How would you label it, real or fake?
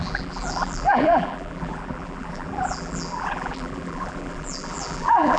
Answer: fake